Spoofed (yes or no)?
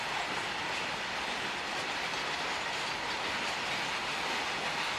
no